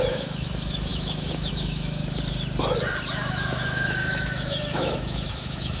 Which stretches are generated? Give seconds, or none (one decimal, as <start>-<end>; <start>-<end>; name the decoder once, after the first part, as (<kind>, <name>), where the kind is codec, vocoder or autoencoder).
0.0-2.0 (autoencoder, DAC-VAE); 3.3-5.8